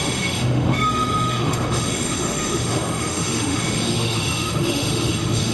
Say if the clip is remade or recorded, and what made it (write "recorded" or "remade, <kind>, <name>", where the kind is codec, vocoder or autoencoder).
remade, autoencoder, DAC-VAE